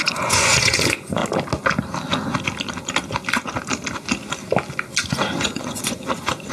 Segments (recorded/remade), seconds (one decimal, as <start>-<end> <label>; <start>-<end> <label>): 0.0-1.2 remade; 1.2-5.1 recorded; 5.1-6.5 remade